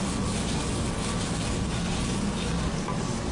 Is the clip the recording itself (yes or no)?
yes